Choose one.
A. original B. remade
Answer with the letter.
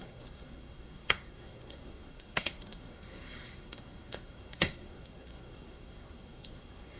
B